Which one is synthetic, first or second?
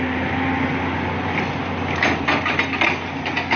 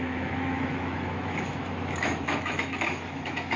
second